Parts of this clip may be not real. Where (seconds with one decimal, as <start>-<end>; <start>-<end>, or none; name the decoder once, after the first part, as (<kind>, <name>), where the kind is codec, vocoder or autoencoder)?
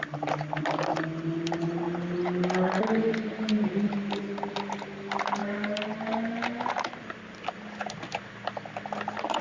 none